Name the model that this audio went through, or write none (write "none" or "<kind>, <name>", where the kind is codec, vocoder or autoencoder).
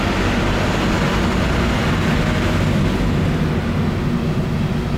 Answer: none